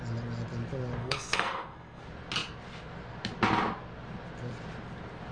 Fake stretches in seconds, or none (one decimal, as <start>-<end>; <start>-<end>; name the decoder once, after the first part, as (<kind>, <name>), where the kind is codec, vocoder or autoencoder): 1.0-2.0 (codec, SNAC)